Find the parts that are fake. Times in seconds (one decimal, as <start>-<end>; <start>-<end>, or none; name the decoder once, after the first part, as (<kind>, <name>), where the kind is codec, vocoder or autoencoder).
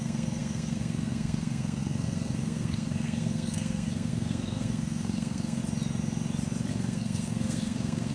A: 0.0-5.6 (codec, SNAC); 6.7-8.1